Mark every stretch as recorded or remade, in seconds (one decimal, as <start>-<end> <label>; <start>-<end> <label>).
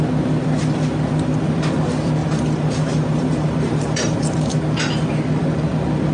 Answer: 0.0-2.2 recorded; 2.2-4.6 remade; 4.6-6.1 recorded